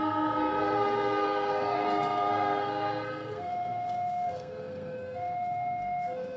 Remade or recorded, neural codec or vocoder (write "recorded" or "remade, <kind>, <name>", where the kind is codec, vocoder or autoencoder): remade, codec, SNAC